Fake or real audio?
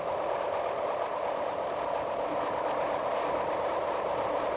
real